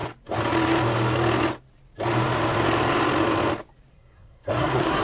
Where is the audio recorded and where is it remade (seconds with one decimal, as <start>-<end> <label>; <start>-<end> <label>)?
0.0-3.9 recorded; 3.9-5.0 remade